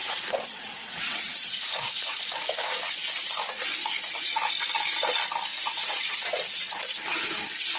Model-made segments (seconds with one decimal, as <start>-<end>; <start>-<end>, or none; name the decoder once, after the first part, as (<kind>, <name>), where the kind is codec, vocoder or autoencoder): 0.0-2.2 (vocoder, WaveNeXt); 5.5-6.8